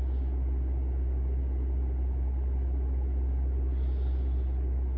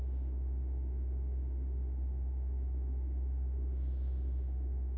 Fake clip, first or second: second